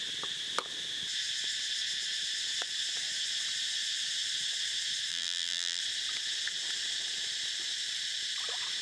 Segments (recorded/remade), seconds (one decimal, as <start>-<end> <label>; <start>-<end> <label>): 0.0-5.1 recorded; 5.1-5.8 remade; 5.8-8.8 recorded